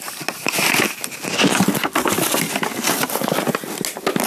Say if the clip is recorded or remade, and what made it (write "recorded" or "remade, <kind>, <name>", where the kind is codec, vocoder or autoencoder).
recorded